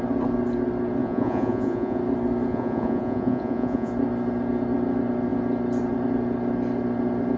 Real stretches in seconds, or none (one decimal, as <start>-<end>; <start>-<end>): 0.0-1.0; 2.0-2.5; 3.9-7.4